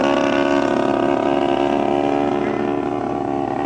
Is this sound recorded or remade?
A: recorded